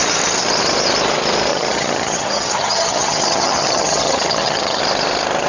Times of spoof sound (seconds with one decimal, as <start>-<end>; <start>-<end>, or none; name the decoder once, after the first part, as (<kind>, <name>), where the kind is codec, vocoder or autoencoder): 1.5-4.8 (vocoder, HiFi-GAN)